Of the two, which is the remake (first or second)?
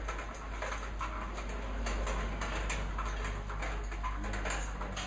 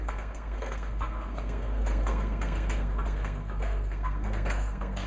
second